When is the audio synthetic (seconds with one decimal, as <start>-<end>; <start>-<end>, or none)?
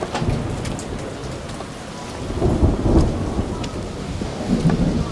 4.0-4.6